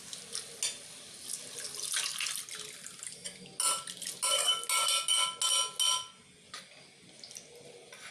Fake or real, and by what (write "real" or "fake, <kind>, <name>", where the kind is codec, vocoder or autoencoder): real